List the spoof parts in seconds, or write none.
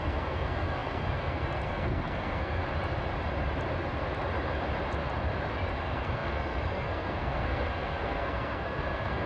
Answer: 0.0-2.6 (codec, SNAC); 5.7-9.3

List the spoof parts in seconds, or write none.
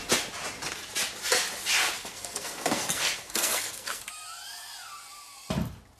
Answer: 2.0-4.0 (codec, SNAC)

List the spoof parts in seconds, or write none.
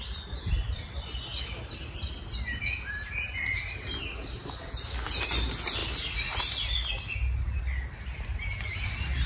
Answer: none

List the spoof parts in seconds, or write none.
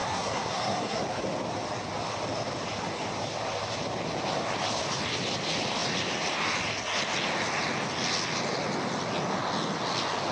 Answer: 0.0-1.0 (codec, SNAC)